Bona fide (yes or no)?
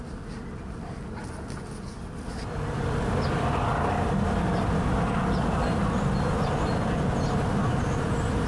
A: yes